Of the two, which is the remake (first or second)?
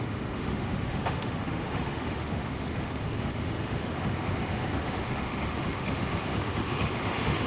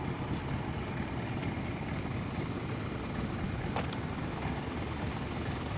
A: first